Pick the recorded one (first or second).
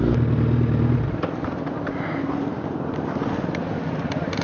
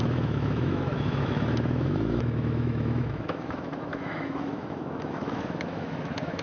first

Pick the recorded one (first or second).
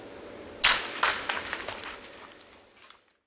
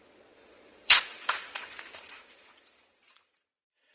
first